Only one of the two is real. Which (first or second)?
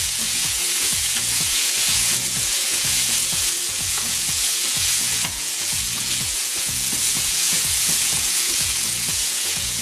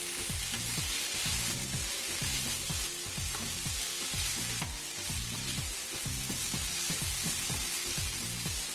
second